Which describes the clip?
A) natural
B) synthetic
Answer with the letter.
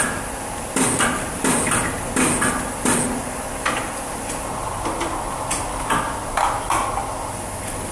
A